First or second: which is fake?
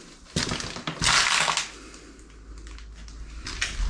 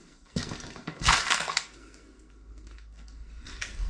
second